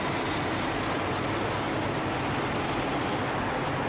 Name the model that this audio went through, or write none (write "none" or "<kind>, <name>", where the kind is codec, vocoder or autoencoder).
none